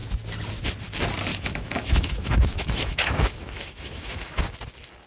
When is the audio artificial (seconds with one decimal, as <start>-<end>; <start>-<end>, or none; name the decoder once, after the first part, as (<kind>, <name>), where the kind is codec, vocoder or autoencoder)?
1.3-4.4 (autoencoder, DAC-VAE)